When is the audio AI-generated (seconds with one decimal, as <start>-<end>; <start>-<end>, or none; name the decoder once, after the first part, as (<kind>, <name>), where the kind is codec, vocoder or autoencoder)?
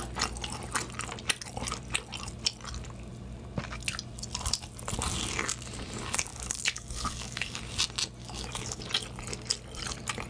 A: 6.3-7.6 (codec, DAC); 8.2-8.8